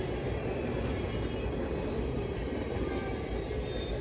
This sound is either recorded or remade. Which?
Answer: recorded